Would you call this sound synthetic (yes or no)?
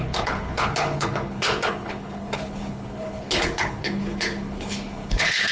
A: yes